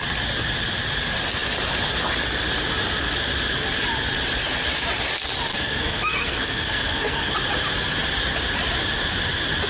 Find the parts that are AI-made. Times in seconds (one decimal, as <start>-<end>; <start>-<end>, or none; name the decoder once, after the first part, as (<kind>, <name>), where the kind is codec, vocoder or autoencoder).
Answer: 5.5-7.3 (codec, SNAC)